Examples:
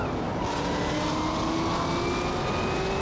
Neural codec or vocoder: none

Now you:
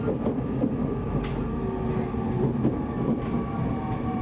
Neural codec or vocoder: none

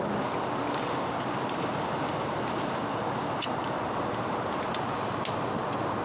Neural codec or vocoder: none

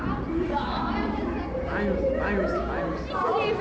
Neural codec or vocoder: none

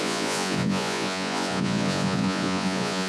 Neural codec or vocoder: vocoder, Vocos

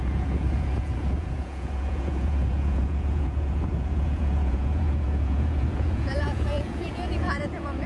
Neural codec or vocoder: vocoder, Vocos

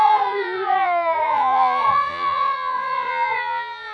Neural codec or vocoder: vocoder, Vocos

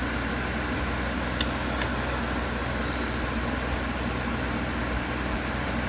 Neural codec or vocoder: none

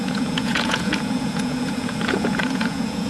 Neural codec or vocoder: vocoder, Vocos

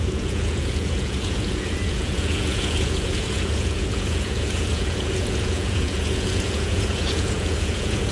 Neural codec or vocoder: vocoder, Vocos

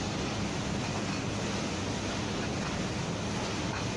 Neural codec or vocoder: none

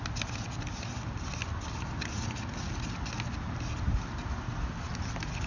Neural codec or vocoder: none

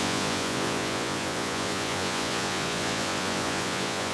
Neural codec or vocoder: vocoder, Vocos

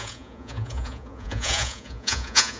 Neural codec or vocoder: vocoder, Vocos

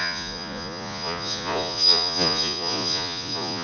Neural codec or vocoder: vocoder, Vocos